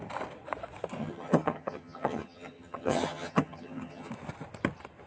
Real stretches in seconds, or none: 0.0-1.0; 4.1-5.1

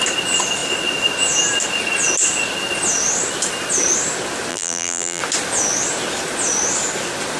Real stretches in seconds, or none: 0.0-4.5; 5.2-7.4

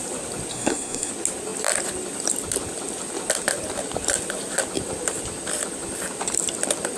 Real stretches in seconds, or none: 0.0-0.5; 1.1-7.0

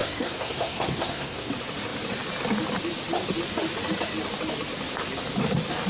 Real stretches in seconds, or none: 1.5-5.9

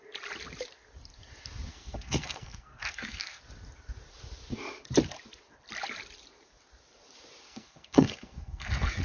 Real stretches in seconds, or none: 0.0-1.7; 3.4-7.4

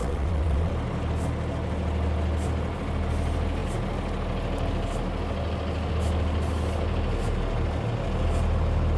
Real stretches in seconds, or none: 0.7-9.0

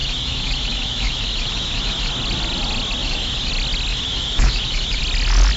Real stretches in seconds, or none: 2.1-3.0; 3.5-3.9; 5.0-5.6

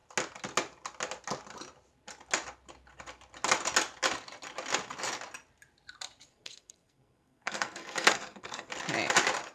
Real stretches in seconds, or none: 0.0-6.3; 8.7-9.5